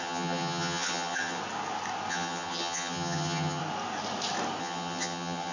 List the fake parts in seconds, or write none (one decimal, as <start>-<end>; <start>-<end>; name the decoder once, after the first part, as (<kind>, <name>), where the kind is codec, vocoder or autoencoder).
0.0-1.4 (vocoder, HiFi-GAN); 2.1-3.6; 4.6-5.5